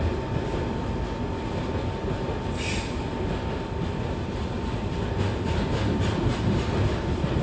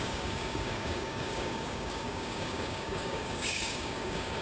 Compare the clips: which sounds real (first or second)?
first